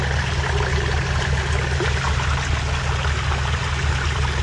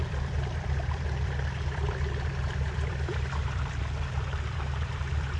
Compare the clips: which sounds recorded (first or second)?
first